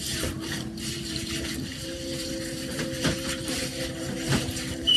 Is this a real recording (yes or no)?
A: no